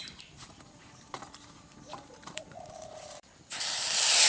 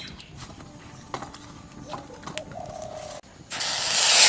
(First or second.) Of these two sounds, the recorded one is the second